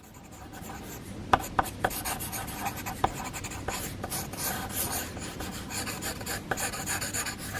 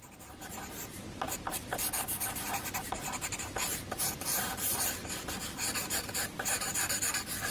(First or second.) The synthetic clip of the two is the second